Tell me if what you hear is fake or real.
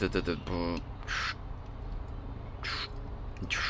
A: real